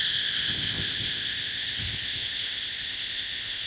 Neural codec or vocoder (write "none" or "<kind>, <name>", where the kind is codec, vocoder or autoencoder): codec, ZipCodec